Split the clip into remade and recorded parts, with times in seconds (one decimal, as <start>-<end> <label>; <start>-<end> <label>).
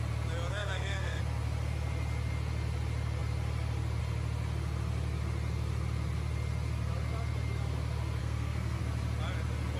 0.0-0.5 recorded; 0.5-1.2 remade; 1.2-8.2 recorded; 8.2-8.8 remade; 8.8-9.8 recorded